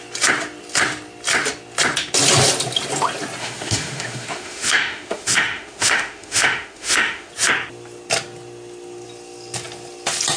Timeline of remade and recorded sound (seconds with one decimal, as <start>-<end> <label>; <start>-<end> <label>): 0.0-3.4 recorded; 3.4-7.3 remade; 7.3-10.4 recorded